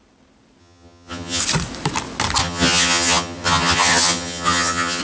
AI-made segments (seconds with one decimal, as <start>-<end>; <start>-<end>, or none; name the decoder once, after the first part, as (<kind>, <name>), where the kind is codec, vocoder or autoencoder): 0.6-1.4 (vocoder, HiFi-GAN); 2.4-5.0